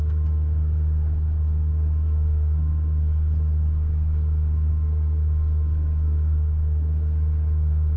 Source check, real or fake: fake